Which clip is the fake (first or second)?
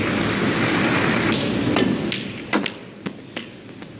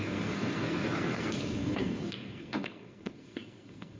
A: second